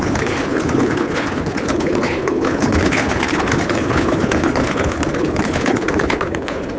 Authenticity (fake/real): fake